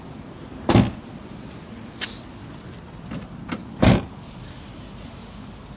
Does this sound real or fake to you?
real